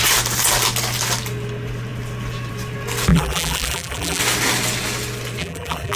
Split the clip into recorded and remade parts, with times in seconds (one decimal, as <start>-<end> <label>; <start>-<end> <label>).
0.0-3.1 recorded; 3.1-4.2 remade; 4.2-5.4 recorded; 5.4-6.0 remade

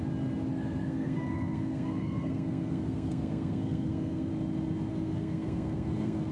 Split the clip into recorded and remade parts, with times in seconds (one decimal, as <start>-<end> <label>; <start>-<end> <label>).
0.0-0.5 recorded; 0.5-4.3 remade; 4.3-4.9 recorded; 4.9-6.3 remade

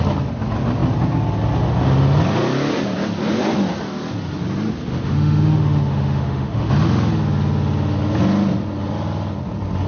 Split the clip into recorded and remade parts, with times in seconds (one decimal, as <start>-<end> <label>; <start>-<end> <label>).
0.0-4.9 recorded; 4.9-6.7 remade; 6.7-9.9 recorded

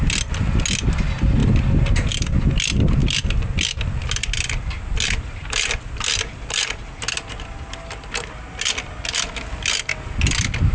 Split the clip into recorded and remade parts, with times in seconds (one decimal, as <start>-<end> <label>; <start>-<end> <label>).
0.0-10.7 recorded

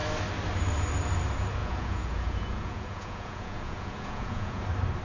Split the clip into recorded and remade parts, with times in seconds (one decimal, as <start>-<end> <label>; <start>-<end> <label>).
0.0-1.6 recorded; 1.6-4.6 remade; 4.6-5.0 recorded

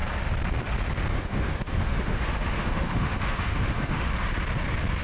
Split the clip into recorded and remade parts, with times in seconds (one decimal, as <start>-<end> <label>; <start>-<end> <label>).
0.0-1.1 recorded; 1.1-4.1 remade; 4.1-5.0 recorded

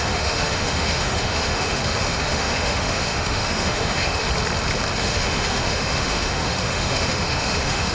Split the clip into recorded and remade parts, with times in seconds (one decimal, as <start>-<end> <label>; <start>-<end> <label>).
0.0-4.2 remade; 4.2-5.0 recorded; 5.0-7.9 remade

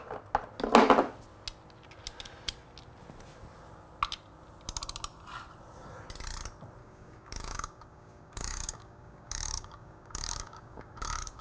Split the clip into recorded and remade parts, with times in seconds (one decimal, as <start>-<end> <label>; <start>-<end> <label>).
0.0-6.8 recorded; 6.8-11.4 remade